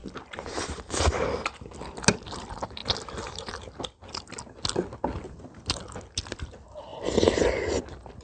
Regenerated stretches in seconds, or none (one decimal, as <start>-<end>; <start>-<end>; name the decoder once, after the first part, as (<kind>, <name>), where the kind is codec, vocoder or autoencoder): none